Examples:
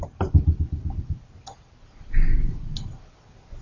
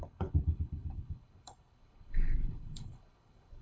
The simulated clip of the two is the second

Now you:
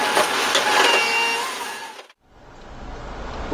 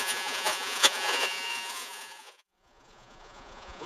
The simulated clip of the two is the second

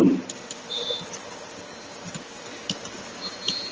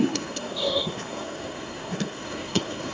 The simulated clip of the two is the second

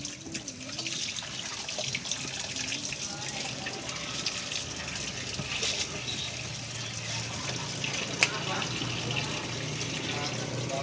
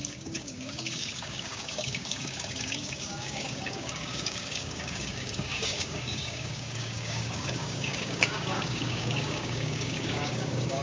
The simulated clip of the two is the second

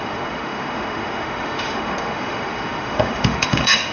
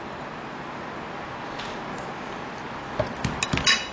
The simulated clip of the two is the first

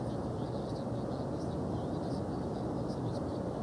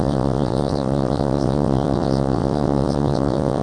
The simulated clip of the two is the second